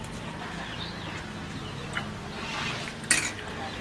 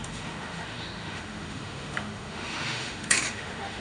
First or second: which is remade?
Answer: second